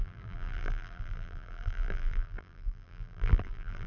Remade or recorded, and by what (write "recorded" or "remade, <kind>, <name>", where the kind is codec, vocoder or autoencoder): remade, vocoder, BigVGAN v2